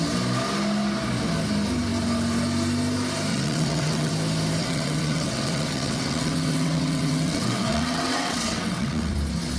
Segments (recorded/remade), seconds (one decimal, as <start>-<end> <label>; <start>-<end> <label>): 0.0-3.3 recorded; 3.3-4.1 remade; 4.1-4.6 recorded; 4.6-9.1 remade; 9.1-9.6 recorded